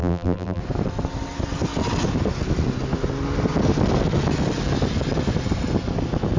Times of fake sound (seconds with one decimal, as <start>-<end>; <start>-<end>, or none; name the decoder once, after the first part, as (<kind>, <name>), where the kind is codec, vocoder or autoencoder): 0.0-0.6 (vocoder, BigVGAN v2)